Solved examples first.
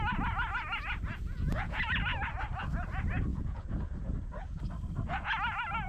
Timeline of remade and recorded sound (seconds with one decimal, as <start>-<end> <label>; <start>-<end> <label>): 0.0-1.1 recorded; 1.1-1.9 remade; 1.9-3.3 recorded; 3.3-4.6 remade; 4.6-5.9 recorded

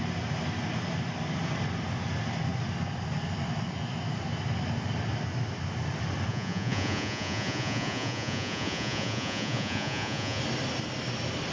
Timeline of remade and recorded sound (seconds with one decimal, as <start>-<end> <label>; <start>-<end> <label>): 0.0-6.3 recorded; 6.3-10.4 remade; 10.4-11.5 recorded

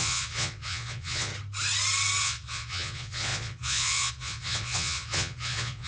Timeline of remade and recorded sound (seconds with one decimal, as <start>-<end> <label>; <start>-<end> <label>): 0.0-1.3 remade; 1.3-2.2 recorded; 2.2-5.9 remade